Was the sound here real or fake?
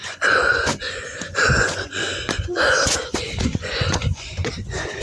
fake